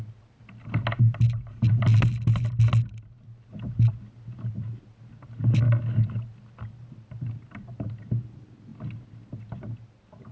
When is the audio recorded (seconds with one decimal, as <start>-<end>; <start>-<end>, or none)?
0.0-10.3